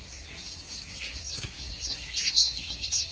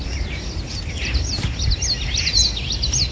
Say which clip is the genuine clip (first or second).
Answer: second